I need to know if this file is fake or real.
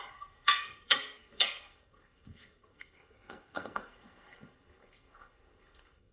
fake